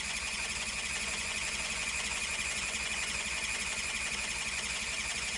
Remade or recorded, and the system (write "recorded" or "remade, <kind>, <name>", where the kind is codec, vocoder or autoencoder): remade, vocoder, Vocos